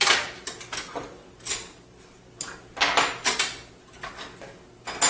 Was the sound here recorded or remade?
recorded